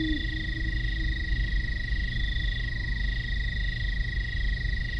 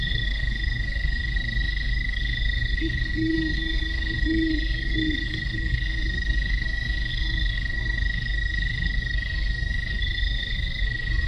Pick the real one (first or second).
first